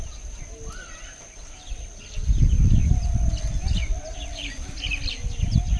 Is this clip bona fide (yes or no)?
yes